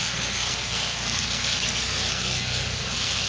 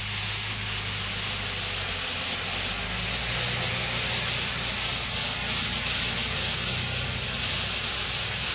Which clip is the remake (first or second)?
first